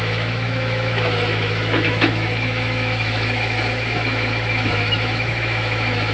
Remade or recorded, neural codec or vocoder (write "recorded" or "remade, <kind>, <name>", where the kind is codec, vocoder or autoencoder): remade, autoencoder, DAC-VAE